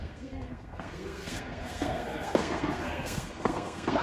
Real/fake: fake